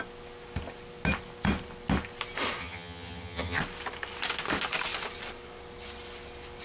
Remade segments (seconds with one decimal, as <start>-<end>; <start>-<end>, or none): 2.6-3.6